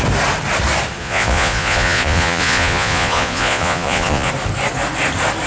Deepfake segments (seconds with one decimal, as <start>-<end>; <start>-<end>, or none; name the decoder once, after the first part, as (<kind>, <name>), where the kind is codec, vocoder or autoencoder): 1.0-4.3 (vocoder, Vocos)